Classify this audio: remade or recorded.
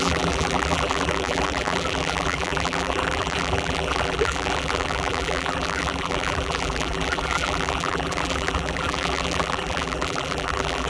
remade